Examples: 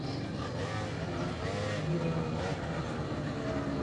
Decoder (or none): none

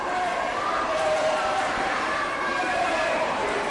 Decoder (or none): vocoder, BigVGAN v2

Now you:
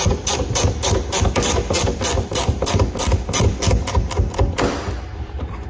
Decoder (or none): vocoder, BigVGAN v2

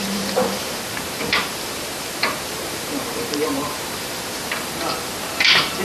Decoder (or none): vocoder, BigVGAN v2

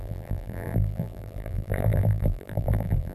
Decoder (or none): vocoder, BigVGAN v2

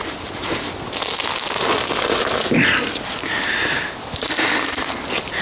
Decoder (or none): none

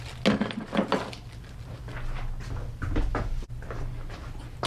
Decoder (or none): none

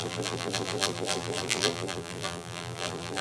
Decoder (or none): vocoder, BigVGAN v2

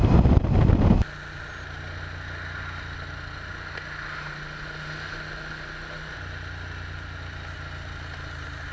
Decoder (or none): none